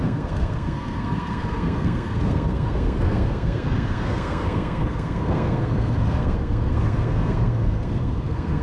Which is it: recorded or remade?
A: remade